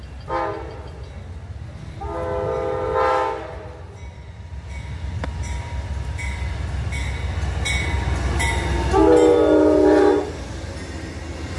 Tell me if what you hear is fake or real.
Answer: real